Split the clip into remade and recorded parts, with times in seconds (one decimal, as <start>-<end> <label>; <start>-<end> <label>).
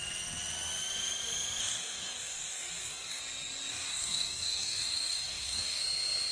0.0-1.6 recorded; 1.6-3.2 remade; 3.2-3.7 recorded; 3.7-5.8 remade; 5.8-6.3 recorded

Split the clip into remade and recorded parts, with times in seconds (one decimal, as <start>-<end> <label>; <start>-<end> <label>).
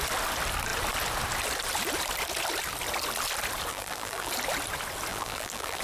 0.0-3.7 recorded; 3.7-4.3 remade; 4.3-5.1 recorded; 5.1-5.8 remade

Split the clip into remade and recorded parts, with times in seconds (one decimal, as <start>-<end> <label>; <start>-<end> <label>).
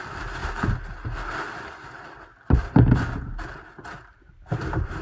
0.0-4.1 recorded; 4.1-5.0 remade